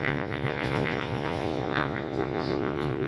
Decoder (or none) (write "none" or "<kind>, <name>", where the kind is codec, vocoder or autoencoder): vocoder, Vocos